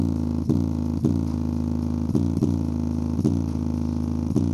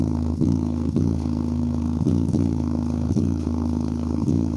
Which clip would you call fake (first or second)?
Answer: second